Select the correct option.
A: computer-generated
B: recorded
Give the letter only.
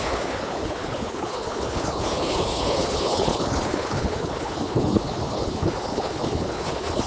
A